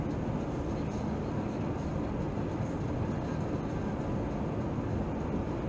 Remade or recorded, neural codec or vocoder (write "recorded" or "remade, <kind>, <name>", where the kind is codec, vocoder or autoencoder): recorded